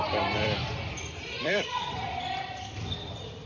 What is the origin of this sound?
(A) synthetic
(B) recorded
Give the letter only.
A